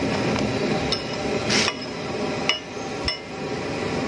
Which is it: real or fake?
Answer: real